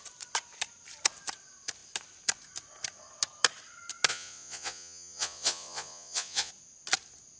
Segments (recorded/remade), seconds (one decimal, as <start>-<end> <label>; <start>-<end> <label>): 0.0-4.1 recorded; 4.1-6.5 remade; 6.5-7.4 recorded